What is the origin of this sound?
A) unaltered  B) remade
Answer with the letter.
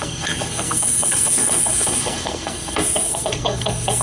B